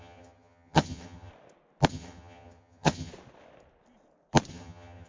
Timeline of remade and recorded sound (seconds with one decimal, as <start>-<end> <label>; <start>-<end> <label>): 0.0-1.3 remade; 1.3-1.9 recorded; 1.9-3.1 remade; 3.1-4.5 recorded; 4.5-5.1 remade